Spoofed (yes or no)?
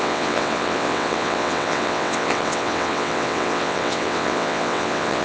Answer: yes